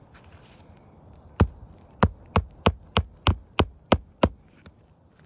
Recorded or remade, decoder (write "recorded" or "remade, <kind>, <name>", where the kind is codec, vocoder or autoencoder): recorded